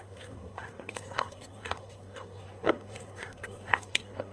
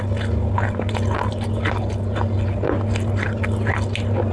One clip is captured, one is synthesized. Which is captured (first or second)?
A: second